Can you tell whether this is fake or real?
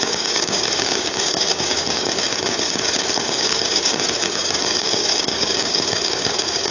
fake